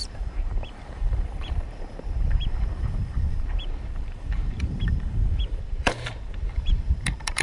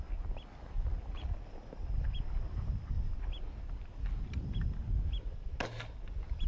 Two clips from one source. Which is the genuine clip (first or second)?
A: second